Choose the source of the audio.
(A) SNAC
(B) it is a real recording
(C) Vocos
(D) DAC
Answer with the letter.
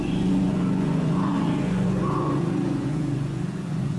C